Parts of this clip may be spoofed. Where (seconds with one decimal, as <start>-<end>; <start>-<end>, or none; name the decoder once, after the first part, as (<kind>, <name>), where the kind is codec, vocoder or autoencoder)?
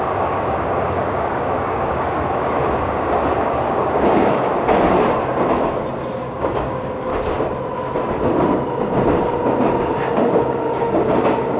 0.0-4.5 (codec, DAC); 6.1-7.1; 9.8-11.6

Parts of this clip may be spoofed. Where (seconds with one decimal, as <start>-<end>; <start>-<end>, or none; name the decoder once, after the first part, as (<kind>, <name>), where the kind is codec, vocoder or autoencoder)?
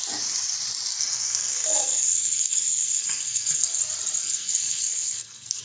0.9-3.8 (codec, SNAC); 4.2-5.6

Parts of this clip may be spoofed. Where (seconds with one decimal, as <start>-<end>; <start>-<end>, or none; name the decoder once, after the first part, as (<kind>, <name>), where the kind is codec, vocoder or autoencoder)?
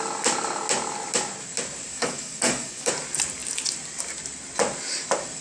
1.9-2.9 (codec, DAC)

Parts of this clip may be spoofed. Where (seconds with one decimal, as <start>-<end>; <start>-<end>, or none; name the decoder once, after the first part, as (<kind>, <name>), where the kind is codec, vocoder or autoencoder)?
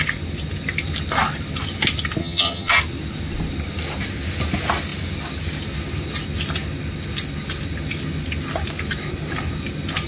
2.2-2.8 (vocoder, HiFi-GAN)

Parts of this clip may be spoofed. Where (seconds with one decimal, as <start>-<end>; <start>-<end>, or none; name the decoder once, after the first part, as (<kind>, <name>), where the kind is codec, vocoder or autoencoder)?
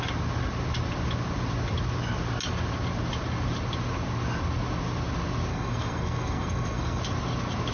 5.5-7.0 (codec, SNAC)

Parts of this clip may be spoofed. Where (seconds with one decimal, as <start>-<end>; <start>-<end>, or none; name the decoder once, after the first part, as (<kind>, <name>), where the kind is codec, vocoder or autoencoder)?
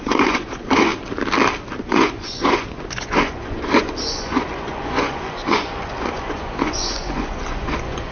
0.0-0.9 (vocoder, Vocos); 1.8-8.1